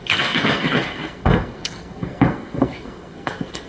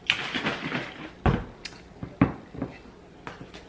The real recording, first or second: second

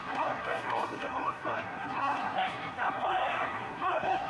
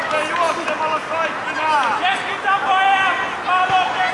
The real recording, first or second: second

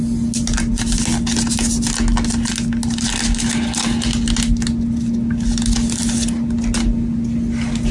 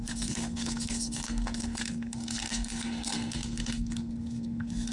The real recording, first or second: first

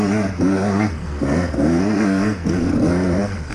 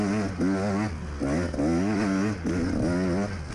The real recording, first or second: second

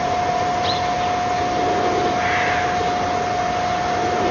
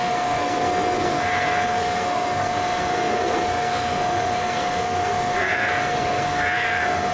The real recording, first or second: first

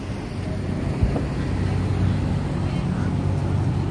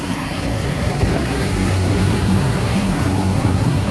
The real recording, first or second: first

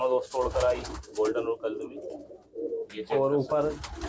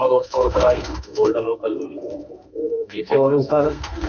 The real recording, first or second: first